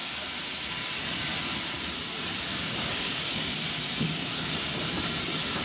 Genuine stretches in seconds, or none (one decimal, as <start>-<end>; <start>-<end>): 0.0-2.5; 3.5-5.6